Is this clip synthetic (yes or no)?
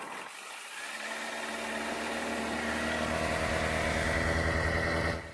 no